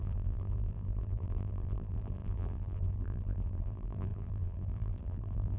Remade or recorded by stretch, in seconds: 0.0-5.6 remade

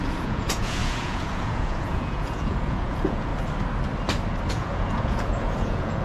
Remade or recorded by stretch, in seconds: 0.0-3.3 remade; 3.3-4.5 recorded; 4.5-6.0 remade

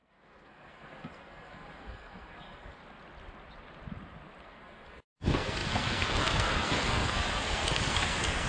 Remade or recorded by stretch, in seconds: 0.0-2.8 remade; 2.8-4.4 recorded; 4.4-8.5 remade

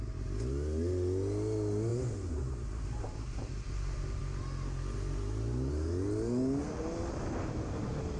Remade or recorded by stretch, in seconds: 0.0-8.2 recorded

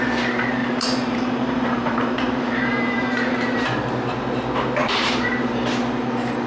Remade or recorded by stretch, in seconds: 0.0-0.6 recorded; 0.6-3.8 remade; 3.8-4.8 recorded; 4.8-5.5 remade; 5.5-6.5 recorded

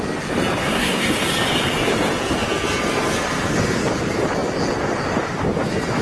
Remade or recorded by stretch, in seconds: 0.0-0.6 recorded; 0.6-1.1 remade; 1.1-6.0 recorded

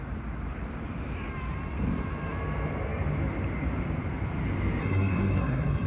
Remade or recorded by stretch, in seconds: 0.0-4.8 recorded; 4.8-5.9 remade

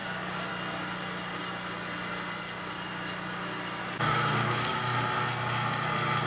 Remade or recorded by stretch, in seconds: 0.0-0.5 remade; 0.5-3.8 recorded; 3.8-4.8 remade; 4.8-6.3 recorded